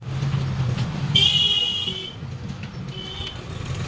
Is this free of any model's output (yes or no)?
yes